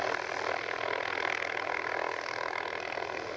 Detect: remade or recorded recorded